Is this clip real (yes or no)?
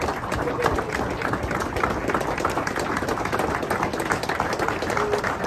yes